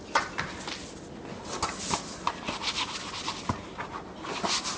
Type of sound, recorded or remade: recorded